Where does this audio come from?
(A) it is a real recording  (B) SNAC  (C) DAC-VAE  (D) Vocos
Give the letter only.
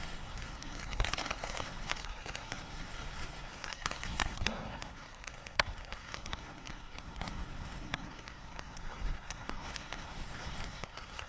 B